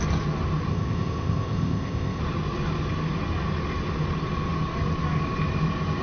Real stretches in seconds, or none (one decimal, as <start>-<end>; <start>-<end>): 0.0-0.7; 2.2-6.0